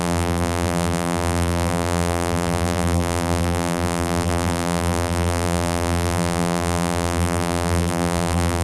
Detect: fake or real fake